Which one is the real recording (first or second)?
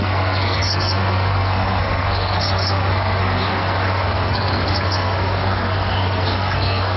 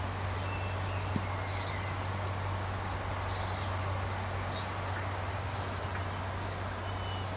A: second